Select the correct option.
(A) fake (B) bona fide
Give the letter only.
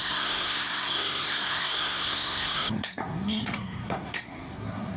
A